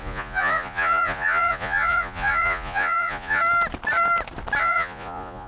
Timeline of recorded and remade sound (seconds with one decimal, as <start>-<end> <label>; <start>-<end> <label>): 0.0-3.4 remade; 3.4-4.6 recorded; 4.6-5.5 remade